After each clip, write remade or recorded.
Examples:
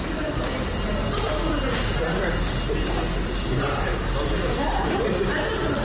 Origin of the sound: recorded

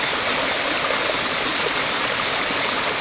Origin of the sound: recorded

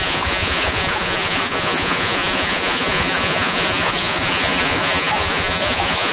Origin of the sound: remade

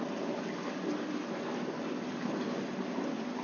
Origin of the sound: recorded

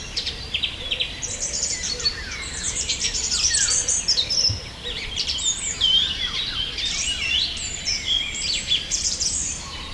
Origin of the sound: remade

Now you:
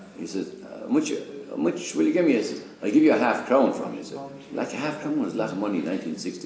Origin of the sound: recorded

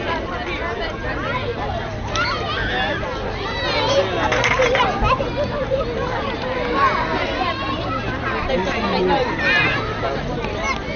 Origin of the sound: recorded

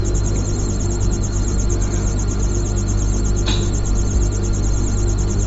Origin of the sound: recorded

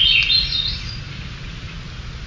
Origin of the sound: recorded